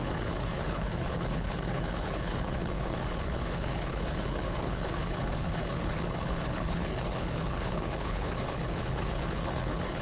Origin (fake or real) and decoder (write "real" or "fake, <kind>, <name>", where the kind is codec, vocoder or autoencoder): fake, codec, HILCodec